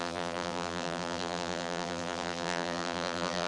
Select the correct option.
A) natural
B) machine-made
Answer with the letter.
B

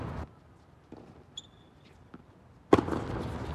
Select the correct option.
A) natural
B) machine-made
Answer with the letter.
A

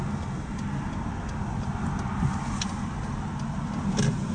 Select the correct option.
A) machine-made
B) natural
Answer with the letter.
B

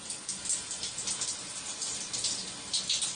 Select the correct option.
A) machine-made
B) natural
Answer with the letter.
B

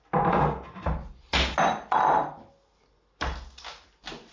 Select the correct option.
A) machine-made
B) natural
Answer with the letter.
B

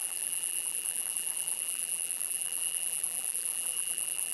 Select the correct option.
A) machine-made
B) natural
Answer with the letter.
A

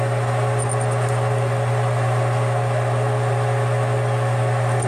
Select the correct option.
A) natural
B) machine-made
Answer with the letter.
A